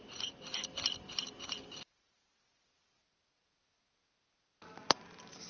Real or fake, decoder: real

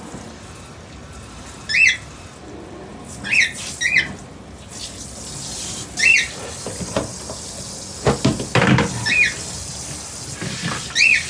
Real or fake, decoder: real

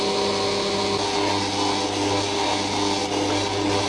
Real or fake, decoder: real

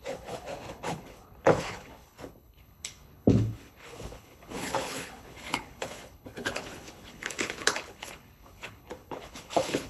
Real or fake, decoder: fake, codec, HILCodec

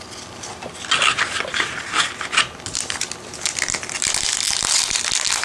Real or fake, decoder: real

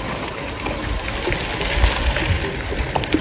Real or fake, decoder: real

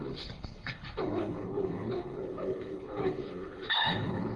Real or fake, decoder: fake, codec, HILCodec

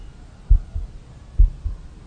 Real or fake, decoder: real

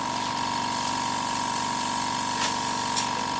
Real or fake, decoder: real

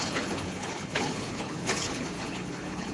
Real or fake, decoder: fake, codec, HILCodec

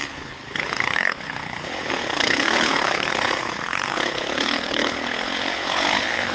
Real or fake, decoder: fake, codec, HILCodec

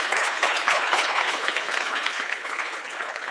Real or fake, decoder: fake, codec, HILCodec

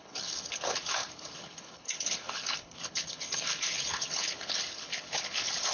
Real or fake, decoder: fake, codec, HILCodec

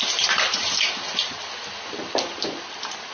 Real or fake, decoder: real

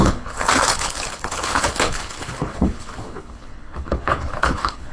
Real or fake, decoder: fake, codec, HILCodec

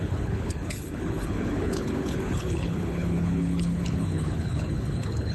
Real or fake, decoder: fake, codec, HILCodec